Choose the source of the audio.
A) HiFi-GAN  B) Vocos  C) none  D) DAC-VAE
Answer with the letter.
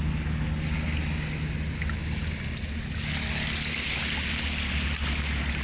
C